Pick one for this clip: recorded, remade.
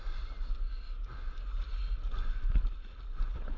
recorded